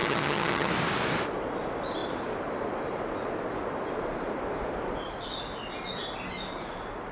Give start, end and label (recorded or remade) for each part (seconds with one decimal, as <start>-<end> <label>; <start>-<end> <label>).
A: 0.0-0.7 remade; 0.7-7.1 recorded